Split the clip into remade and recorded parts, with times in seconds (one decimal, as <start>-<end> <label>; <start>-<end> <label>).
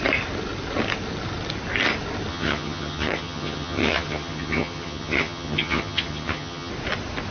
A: 0.0-2.3 recorded; 2.3-6.7 remade; 6.7-7.3 recorded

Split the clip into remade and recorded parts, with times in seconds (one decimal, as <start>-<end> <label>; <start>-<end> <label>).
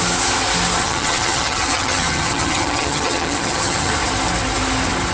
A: 0.0-0.8 recorded; 0.8-3.9 remade; 3.9-5.1 recorded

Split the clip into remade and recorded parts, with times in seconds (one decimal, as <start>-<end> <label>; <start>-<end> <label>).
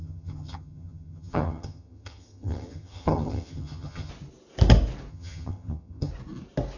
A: 0.0-4.1 remade; 4.1-5.1 recorded; 5.1-6.1 remade; 6.1-6.8 recorded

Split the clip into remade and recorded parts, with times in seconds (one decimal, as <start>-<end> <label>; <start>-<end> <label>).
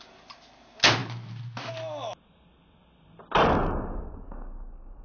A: 0.0-5.0 recorded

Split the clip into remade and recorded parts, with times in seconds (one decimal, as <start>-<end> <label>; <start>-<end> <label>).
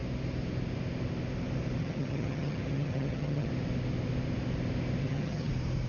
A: 0.0-1.8 recorded; 1.8-3.5 remade; 3.5-5.0 recorded; 5.0-5.5 remade; 5.5-5.9 recorded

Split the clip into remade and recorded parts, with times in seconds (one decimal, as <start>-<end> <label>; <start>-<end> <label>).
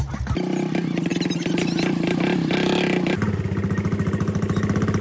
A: 0.0-5.0 recorded